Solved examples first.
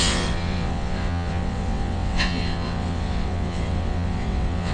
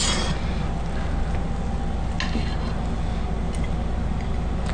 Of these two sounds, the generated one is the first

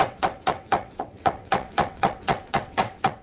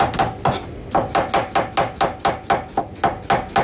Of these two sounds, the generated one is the first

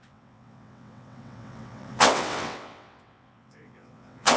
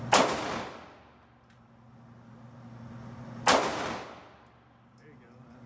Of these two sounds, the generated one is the first